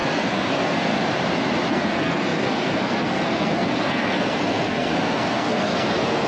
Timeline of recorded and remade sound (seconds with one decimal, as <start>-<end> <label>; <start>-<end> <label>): 0.0-0.9 remade; 0.9-1.7 recorded; 1.7-6.3 remade